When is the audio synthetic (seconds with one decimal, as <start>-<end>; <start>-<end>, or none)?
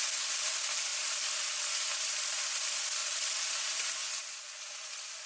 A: none